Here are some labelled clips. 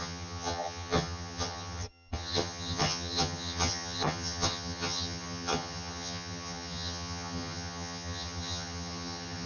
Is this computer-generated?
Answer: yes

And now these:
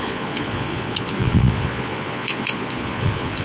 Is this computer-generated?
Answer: yes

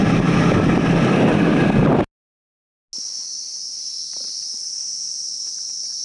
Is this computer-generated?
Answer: no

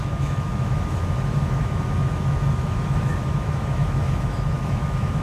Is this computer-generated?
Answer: yes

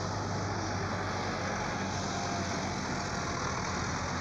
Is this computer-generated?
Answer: no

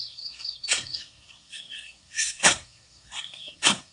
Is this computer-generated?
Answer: yes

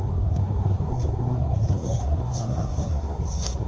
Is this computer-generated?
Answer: yes